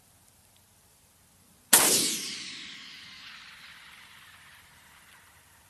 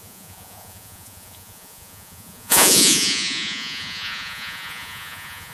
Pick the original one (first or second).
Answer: first